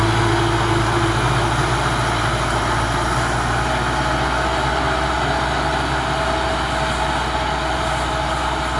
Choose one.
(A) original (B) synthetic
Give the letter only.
A